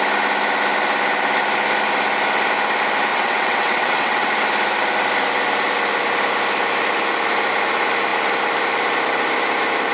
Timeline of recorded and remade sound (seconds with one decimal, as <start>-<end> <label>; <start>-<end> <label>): 0.0-3.1 recorded; 3.1-4.3 remade; 4.3-9.9 recorded